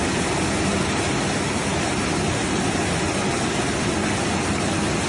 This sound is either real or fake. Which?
real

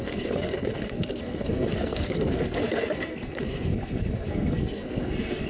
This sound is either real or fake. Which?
fake